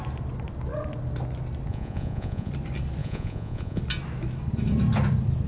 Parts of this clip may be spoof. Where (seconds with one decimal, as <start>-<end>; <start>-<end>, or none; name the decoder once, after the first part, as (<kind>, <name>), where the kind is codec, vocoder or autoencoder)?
1.7-2.5 (vocoder, Vocos); 3.0-3.8